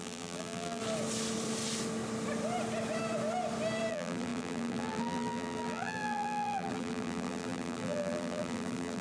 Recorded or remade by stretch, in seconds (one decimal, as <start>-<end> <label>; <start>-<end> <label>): 0.0-0.8 remade; 0.8-3.9 recorded; 3.9-9.0 remade